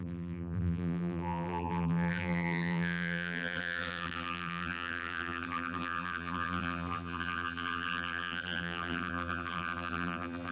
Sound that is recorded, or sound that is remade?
remade